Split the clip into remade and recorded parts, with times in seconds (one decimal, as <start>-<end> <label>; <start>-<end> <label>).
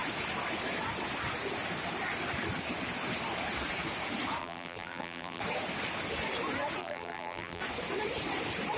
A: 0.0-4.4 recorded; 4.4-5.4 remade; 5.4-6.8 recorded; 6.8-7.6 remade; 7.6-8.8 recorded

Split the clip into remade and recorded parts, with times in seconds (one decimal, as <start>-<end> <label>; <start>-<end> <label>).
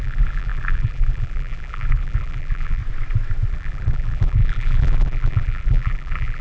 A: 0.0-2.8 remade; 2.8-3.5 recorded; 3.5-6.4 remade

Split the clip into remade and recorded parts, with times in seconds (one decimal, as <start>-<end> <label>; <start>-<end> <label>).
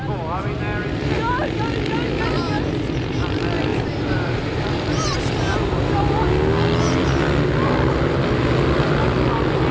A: 0.0-3.7 recorded; 3.7-5.2 remade; 5.2-9.7 recorded